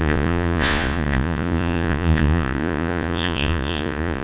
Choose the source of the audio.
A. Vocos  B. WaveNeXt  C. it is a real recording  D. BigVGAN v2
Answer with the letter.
A